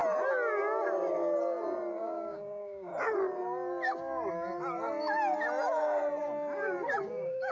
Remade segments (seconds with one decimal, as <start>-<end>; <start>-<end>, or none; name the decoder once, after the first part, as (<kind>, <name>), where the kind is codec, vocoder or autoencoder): 2.0-2.9 (codec, DAC); 7.1-7.5